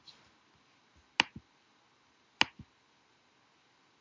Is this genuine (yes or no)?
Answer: yes